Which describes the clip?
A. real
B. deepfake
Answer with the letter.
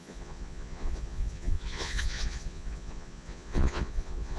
B